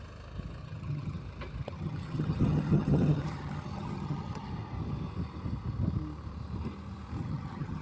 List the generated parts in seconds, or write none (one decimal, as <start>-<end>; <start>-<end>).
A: 0.6-1.2; 1.6-4.5; 7.2-7.8